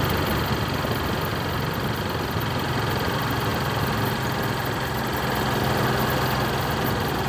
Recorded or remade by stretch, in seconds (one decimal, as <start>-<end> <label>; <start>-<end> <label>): 0.0-7.3 recorded